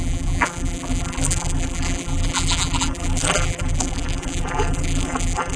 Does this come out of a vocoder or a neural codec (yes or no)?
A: yes